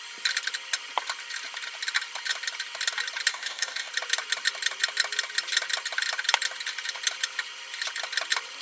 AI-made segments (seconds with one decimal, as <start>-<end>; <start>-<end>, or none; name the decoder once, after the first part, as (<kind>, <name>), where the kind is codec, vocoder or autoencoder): 3.3-3.9 (codec, DAC)